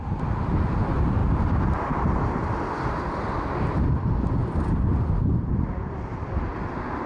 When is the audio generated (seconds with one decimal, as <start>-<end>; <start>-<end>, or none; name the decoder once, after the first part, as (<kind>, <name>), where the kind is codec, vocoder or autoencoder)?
none